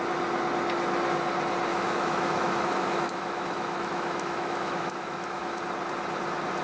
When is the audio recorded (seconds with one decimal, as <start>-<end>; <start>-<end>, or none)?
0.0-1.7; 5.6-6.6